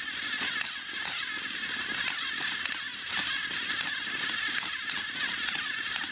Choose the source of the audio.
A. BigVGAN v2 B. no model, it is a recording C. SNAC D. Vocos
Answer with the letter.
B